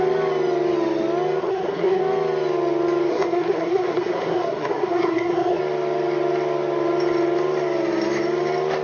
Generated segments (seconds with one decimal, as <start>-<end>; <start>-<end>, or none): 1.4-2.0; 3.1-5.6